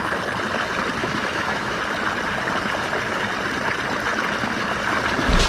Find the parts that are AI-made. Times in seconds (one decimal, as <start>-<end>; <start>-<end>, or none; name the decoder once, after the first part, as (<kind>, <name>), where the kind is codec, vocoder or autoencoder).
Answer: 1.0-1.8 (autoencoder, DAC-VAE)